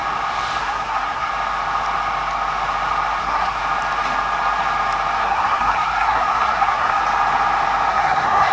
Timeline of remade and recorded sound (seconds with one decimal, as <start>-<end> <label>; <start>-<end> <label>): 0.0-0.6 recorded; 0.6-1.3 remade; 1.3-3.2 recorded; 3.2-3.6 remade; 3.6-5.2 recorded; 5.2-7.0 remade; 7.0-7.9 recorded; 7.9-8.5 remade